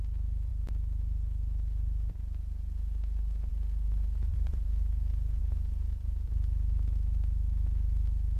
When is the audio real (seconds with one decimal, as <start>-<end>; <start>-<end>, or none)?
0.0-4.3; 5.4-8.4